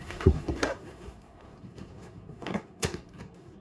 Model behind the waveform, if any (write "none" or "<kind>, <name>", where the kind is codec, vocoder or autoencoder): codec, SNAC